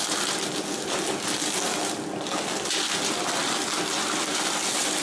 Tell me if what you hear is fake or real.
real